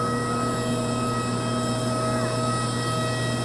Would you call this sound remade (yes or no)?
no